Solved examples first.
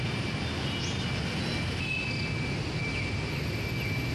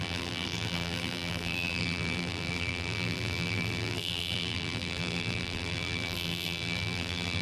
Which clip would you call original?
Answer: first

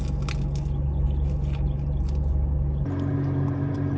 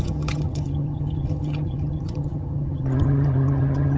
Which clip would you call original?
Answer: first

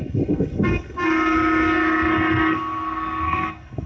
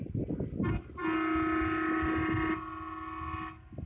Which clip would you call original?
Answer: second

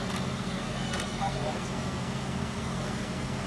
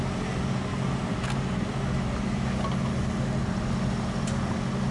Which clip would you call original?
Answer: second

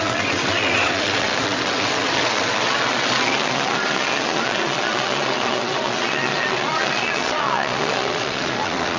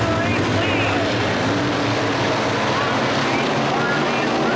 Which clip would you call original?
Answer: second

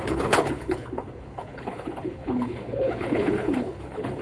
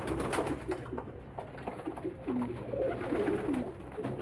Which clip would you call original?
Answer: second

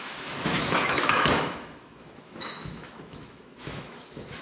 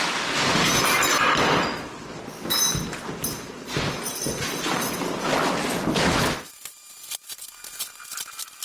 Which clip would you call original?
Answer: second